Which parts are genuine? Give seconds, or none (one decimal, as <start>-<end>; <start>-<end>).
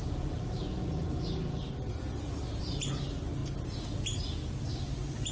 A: 0.0-5.3